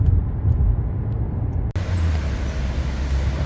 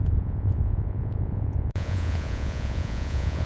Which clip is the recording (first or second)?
first